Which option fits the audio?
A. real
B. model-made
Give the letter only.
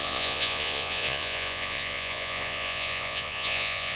B